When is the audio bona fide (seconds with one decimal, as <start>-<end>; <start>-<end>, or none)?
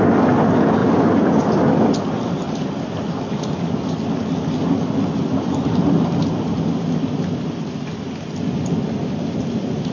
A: 0.0-9.9